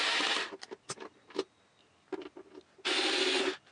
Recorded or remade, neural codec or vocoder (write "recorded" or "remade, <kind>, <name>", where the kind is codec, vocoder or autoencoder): recorded